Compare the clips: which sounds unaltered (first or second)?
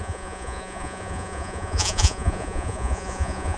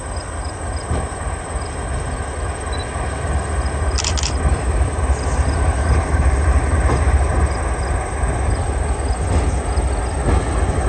second